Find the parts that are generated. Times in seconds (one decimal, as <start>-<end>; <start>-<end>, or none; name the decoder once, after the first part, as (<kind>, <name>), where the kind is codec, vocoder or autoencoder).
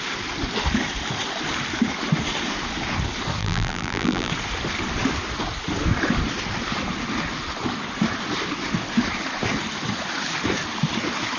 3.4-4.3 (vocoder, BigVGAN v2)